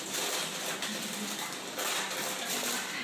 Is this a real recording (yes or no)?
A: yes